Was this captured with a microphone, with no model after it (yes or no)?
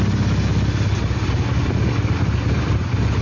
yes